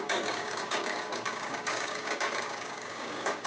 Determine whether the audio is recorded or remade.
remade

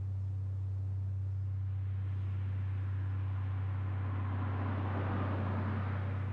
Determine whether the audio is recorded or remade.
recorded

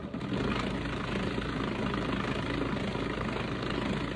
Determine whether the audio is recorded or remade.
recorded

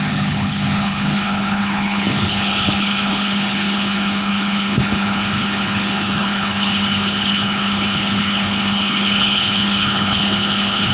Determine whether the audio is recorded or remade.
remade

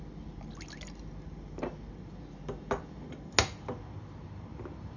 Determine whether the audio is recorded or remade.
recorded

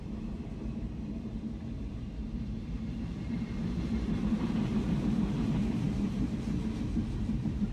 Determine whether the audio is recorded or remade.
remade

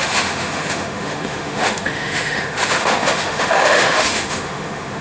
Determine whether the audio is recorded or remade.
remade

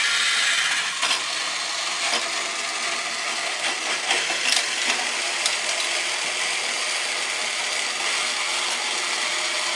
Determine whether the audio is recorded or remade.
recorded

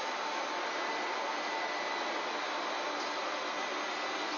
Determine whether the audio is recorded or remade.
recorded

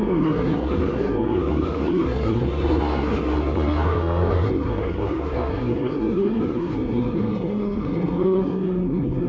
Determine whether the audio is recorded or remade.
remade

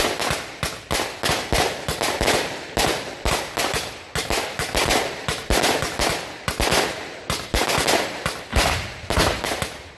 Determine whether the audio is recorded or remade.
recorded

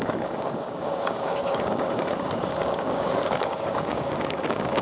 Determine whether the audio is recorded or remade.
remade